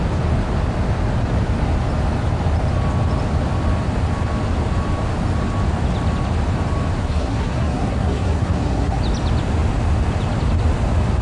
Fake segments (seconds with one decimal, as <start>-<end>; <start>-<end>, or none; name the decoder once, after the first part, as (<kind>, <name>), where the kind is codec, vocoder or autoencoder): 7.0-9.0 (codec, SNAC)